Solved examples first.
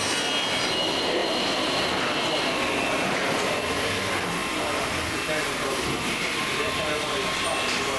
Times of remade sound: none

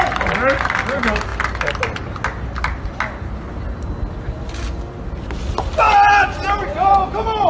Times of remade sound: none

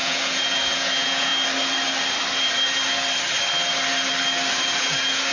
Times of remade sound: 0.0-1.3; 4.5-5.3

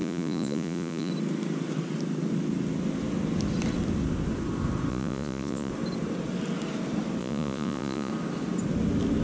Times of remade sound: 0.0-1.1; 4.9-5.7; 7.2-8.1